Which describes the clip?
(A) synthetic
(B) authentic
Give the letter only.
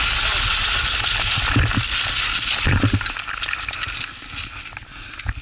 B